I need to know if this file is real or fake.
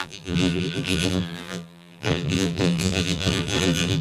fake